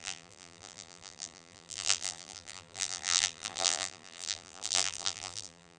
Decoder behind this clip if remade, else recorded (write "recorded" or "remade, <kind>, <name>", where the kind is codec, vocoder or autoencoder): remade, vocoder, BigVGAN v2